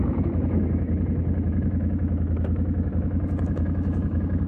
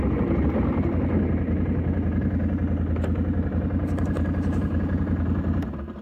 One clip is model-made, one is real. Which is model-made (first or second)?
first